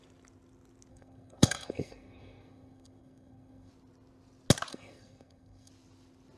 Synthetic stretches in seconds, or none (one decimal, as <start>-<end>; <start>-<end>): 0.9-3.7; 4.7-5.7